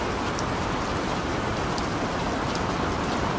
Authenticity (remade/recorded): recorded